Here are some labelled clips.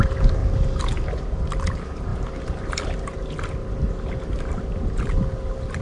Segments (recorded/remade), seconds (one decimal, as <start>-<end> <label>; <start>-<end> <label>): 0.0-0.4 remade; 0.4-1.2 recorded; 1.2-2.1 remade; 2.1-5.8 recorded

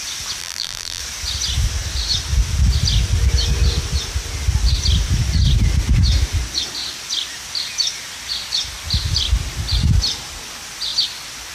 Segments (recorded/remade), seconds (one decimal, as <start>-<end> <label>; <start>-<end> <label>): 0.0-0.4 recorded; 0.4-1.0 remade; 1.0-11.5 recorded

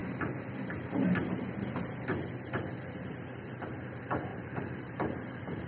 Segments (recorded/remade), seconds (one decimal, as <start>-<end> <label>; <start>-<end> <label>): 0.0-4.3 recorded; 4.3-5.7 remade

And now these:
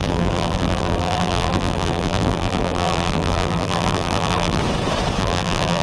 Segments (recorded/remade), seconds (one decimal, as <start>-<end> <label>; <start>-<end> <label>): 0.0-4.6 remade; 4.6-5.2 recorded; 5.2-5.8 remade

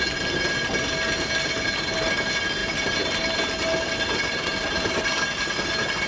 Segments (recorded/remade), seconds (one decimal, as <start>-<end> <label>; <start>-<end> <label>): 0.0-2.6 recorded; 2.6-6.1 remade